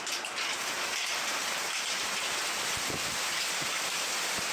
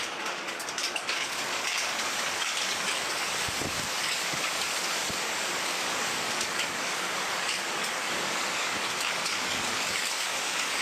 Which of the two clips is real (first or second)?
first